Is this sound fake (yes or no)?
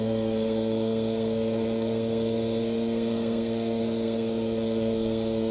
yes